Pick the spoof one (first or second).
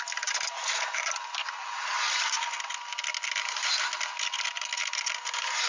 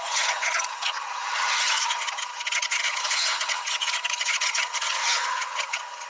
second